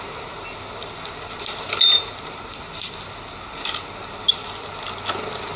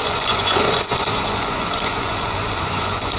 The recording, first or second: first